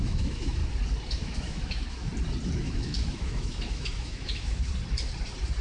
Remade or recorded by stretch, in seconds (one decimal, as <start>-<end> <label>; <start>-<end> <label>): 0.0-0.6 remade; 0.6-1.1 recorded; 1.1-2.1 remade; 2.1-2.6 recorded; 2.6-4.7 remade; 4.7-5.6 recorded